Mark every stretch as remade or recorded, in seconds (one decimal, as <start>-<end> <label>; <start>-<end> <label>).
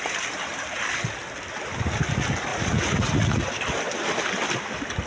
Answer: 0.0-2.5 recorded; 2.5-3.5 remade; 3.5-5.1 recorded